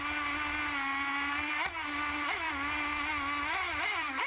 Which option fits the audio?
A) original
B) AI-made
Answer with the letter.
A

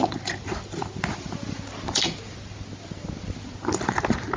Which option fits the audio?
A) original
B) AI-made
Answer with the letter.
A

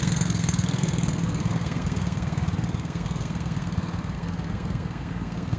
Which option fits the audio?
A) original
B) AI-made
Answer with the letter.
B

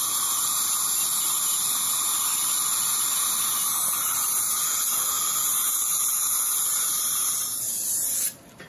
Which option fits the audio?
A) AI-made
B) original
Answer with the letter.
A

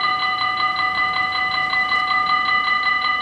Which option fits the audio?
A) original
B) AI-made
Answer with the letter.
B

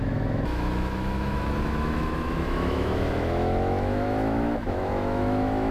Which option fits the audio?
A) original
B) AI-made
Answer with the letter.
B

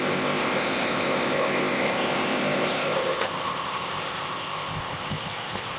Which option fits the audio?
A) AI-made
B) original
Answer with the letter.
A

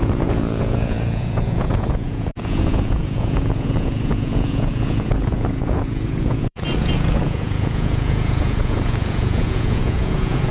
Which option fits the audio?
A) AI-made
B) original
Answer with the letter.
A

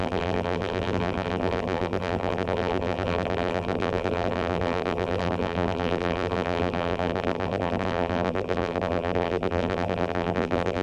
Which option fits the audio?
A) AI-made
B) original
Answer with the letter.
A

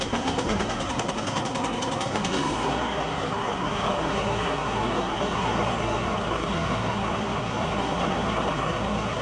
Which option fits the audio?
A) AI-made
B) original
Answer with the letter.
A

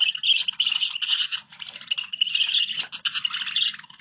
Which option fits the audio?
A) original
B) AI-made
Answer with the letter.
A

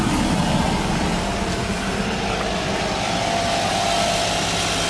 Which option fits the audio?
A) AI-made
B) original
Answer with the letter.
B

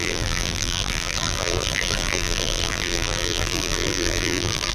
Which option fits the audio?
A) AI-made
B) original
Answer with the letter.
A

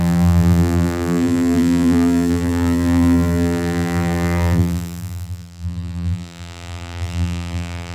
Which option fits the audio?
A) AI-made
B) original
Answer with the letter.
A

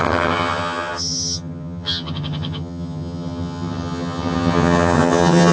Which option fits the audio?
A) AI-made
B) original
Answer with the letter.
A